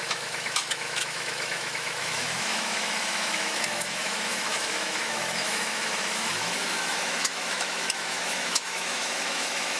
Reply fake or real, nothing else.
fake